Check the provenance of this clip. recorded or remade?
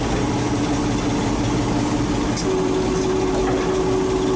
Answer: recorded